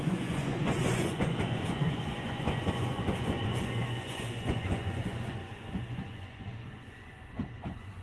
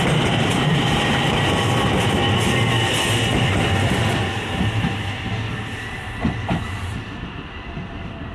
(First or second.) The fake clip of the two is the first